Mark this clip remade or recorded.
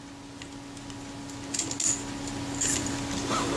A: recorded